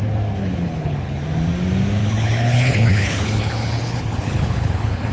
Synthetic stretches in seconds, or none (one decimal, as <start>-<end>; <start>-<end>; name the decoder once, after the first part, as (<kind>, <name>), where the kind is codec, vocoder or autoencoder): 0.4-1.2 (codec, HILCodec); 2.0-5.1